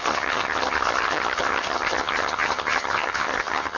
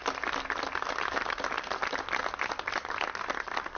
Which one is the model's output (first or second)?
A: first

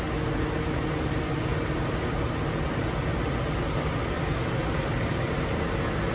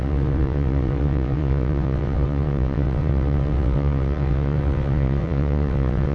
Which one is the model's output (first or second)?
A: second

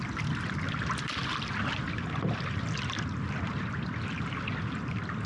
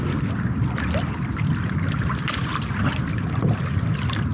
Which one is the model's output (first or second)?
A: second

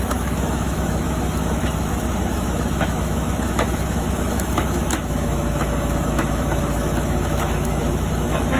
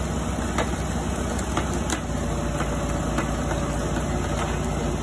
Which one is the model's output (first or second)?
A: first